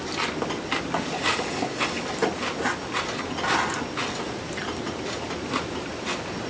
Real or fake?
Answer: real